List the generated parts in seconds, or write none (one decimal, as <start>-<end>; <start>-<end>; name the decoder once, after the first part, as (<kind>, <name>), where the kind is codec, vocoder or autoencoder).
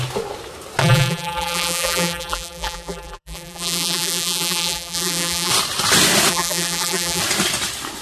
0.8-5.5 (vocoder, BigVGAN v2); 6.3-7.2